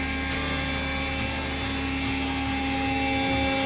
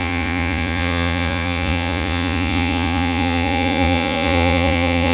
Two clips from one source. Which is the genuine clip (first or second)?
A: first